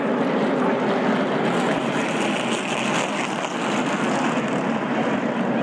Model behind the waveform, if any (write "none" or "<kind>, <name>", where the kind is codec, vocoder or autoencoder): none